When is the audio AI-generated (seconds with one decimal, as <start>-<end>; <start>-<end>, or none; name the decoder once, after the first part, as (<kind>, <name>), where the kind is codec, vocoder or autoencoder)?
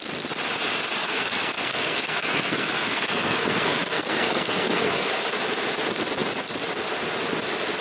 1.0-5.1 (codec, SNAC)